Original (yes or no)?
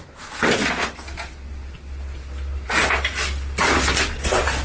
yes